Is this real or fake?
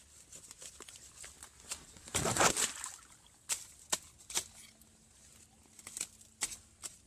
real